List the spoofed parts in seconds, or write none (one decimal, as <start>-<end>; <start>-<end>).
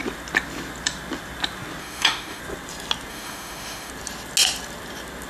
1.8-2.4; 3.1-3.9